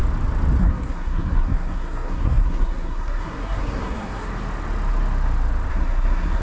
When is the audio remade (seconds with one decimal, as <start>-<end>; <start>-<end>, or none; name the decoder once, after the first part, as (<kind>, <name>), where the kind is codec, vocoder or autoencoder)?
0.6-4.3 (codec, SNAC); 5.7-6.4